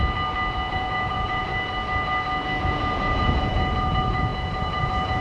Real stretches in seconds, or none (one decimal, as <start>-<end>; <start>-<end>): 0.0-0.7; 1.5-2.6